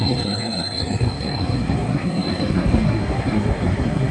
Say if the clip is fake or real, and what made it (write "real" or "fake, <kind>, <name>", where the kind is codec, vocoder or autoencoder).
fake, codec, SNAC